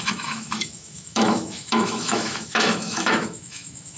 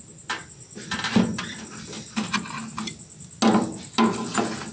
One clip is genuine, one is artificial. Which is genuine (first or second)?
second